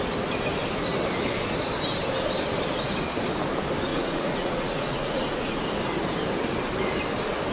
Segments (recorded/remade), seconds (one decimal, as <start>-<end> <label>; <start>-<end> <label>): 0.0-3.9 recorded; 3.9-5.6 remade; 5.6-7.5 recorded